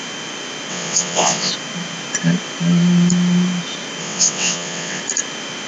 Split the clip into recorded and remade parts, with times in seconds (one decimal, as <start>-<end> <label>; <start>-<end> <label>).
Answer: 0.0-0.7 recorded; 0.7-1.5 remade; 1.5-4.0 recorded; 4.0-5.0 remade; 5.0-5.7 recorded